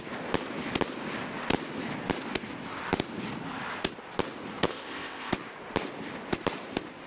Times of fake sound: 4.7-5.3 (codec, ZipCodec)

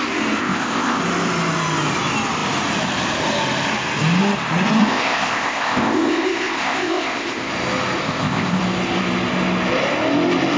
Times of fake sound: 0.4-1.0 (codec, ZipCodec); 4.8-7.5; 8.0-8.6

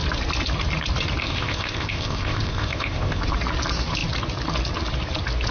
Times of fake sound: 1.2-3.2 (codec, ZipCodec)